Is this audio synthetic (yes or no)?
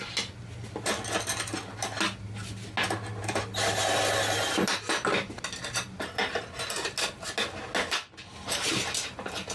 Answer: no